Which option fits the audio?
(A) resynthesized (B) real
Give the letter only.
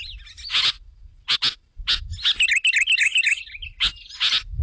B